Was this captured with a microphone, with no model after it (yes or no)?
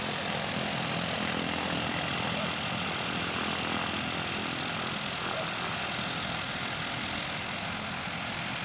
yes